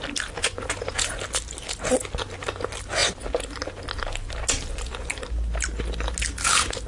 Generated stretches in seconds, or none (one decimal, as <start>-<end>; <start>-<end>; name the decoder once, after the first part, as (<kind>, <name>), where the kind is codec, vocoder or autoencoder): 0.4-1.2 (vocoder, Vocos)